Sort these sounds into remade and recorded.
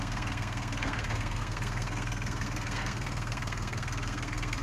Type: remade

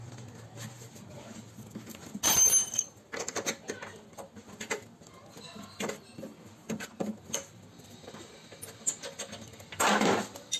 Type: recorded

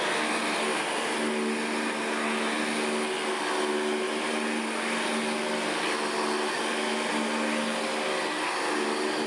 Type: recorded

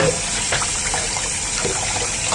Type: recorded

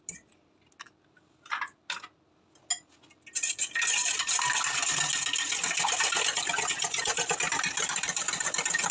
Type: recorded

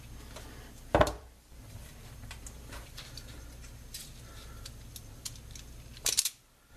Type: recorded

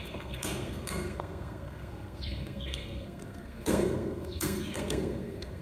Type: remade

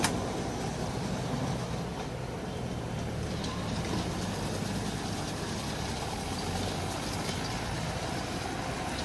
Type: recorded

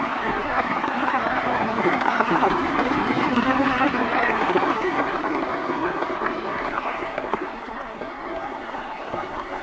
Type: remade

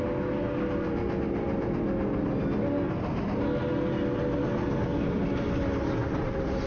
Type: recorded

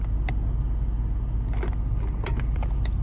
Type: recorded